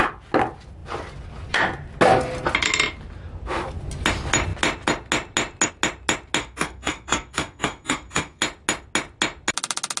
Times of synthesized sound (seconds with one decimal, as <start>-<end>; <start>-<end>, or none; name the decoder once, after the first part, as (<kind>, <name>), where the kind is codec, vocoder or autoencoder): 6.4-8.4 (codec, SNAC)